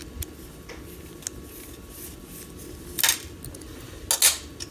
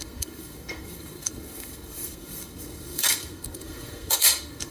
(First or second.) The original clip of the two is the first